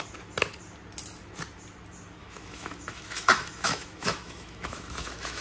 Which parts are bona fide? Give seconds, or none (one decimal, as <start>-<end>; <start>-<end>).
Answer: 0.0-2.2